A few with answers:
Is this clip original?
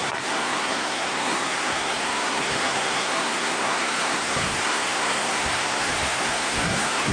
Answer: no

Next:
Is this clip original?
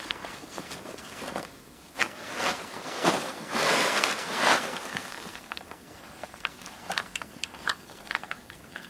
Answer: no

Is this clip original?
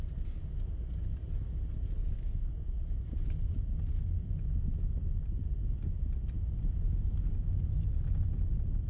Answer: yes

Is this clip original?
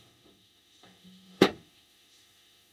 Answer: no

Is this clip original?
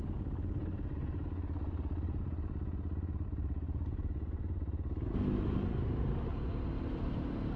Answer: yes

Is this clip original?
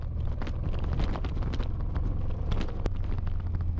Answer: yes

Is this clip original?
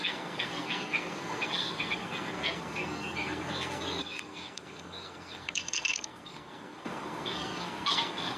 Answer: no